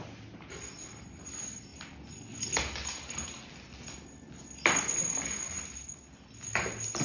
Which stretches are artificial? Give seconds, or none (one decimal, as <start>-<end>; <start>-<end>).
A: none